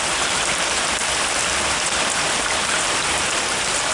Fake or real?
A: real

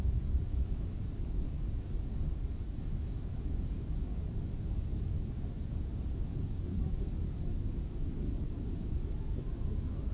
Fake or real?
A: fake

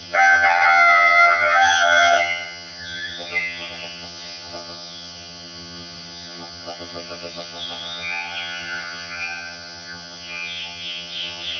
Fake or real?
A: fake